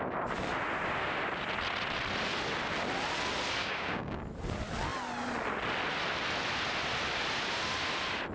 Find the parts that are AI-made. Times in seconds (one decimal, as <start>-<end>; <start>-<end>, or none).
3.6-4.2